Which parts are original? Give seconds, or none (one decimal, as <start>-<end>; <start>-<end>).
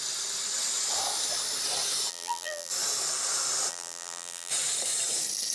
0.0-2.1; 2.7-3.7; 4.5-5.5